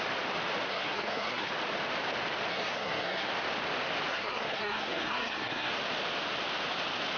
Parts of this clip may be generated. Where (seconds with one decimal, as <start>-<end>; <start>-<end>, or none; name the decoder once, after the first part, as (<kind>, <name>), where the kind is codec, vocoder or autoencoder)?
0.7-1.5 (codec, SNAC); 2.5-3.3; 4.1-5.7